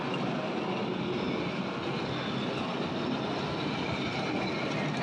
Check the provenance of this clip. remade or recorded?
recorded